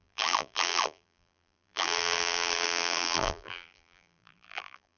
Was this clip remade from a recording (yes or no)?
yes